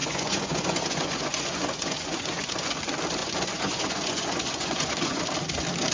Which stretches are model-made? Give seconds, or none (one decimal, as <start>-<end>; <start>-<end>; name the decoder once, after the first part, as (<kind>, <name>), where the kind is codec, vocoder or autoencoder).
0.0-2.7 (vocoder, Vocos); 3.2-5.2